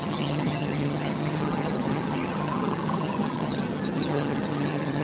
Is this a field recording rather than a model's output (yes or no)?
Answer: no